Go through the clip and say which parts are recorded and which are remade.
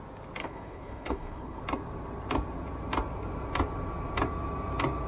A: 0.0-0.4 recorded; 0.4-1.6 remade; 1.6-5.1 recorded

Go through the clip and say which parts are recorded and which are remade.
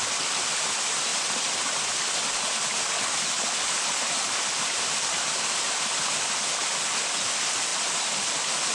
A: 0.0-8.7 recorded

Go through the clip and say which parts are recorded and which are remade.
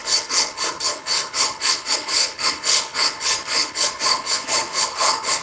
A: 0.0-5.4 remade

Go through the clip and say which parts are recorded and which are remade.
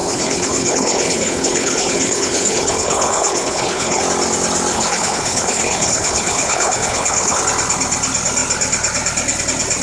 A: 0.0-4.0 remade; 4.0-4.7 recorded; 4.7-7.4 remade; 7.4-9.8 recorded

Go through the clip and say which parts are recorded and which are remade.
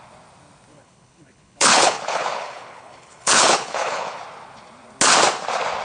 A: 0.0-0.7 recorded; 0.7-4.2 remade; 4.2-5.8 recorded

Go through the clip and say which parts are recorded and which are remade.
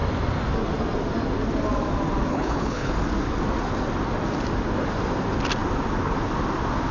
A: 0.0-2.3 recorded; 2.3-2.9 remade; 2.9-6.9 recorded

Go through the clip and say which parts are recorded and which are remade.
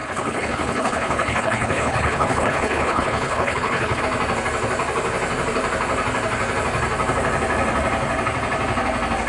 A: 0.0-4.0 remade; 4.0-9.3 recorded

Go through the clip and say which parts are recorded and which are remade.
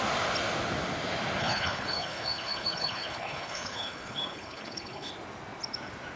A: 0.0-1.4 recorded; 1.4-5.1 remade; 5.1-6.2 recorded